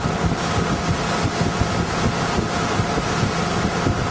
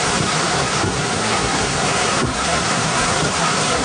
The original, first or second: first